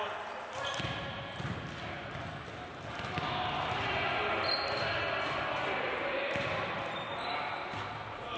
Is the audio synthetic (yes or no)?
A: no